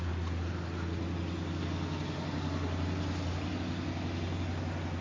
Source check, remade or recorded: recorded